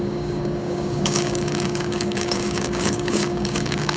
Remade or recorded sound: remade